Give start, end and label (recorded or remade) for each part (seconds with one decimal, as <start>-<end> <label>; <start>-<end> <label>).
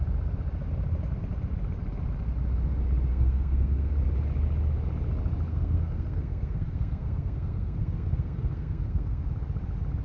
0.0-3.1 recorded; 3.1-3.9 remade; 3.9-5.5 recorded; 5.5-9.3 remade; 9.3-10.0 recorded